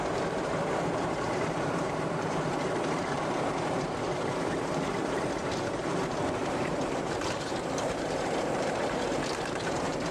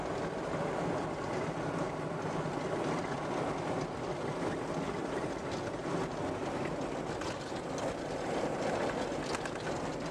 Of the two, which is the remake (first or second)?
first